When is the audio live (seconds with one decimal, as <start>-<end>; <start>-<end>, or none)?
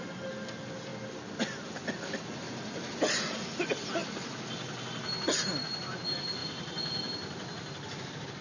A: 0.0-8.4